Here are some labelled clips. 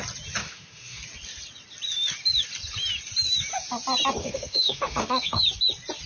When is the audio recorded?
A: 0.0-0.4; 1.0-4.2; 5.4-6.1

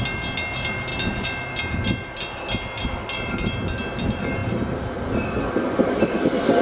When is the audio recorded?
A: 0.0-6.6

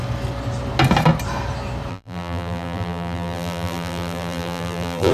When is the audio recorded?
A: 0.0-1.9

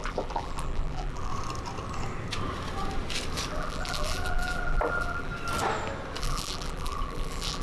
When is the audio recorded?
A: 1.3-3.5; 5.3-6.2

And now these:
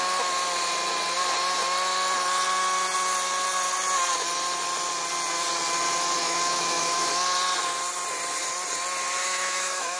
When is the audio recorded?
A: 0.0-6.2; 7.1-9.2